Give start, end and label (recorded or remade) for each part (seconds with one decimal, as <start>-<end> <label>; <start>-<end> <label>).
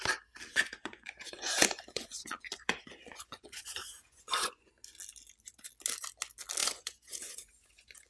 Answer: 0.0-0.5 recorded; 0.5-4.7 remade; 4.7-6.6 recorded; 6.6-8.1 remade